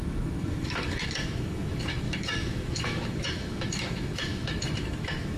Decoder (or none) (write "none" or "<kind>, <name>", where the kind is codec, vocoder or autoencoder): autoencoder, DAC-VAE